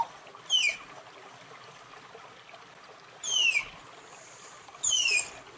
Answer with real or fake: real